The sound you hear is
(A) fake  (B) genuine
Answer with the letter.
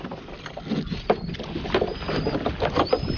B